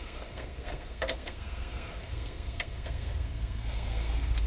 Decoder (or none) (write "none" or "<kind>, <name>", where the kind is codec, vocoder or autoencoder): codec, SNAC